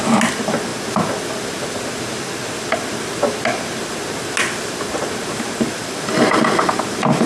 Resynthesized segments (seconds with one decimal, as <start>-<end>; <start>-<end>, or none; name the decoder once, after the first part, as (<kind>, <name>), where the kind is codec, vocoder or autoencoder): none